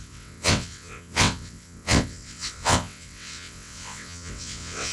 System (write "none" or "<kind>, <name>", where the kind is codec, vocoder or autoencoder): vocoder, WaveNeXt